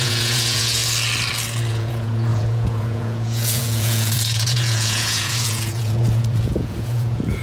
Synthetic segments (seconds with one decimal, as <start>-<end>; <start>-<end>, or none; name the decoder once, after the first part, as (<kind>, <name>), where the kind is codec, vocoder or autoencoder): 0.0-0.8 (vocoder, Vocos); 1.7-7.4